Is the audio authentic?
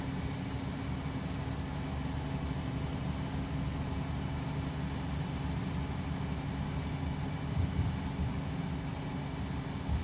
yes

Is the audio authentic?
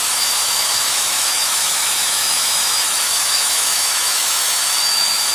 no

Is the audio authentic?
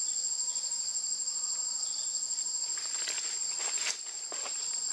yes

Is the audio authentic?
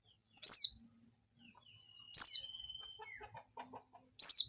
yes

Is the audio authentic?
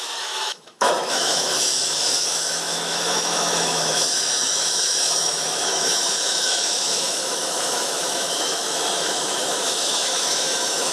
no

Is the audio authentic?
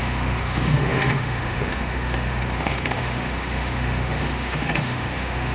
no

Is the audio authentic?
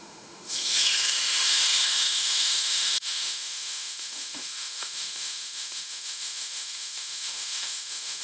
no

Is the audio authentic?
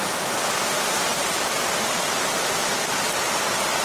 yes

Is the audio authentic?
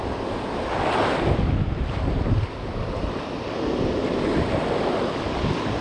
yes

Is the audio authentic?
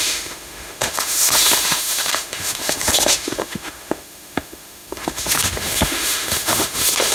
no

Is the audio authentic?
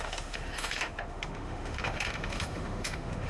no